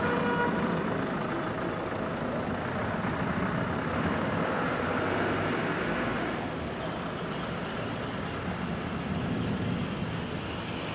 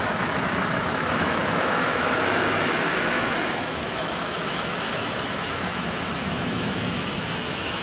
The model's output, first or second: second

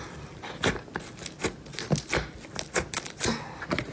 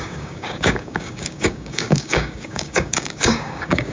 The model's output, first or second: second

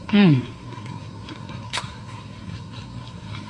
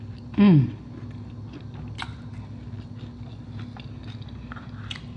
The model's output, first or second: first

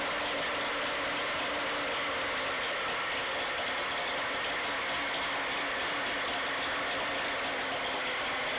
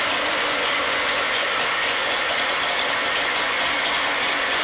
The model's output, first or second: second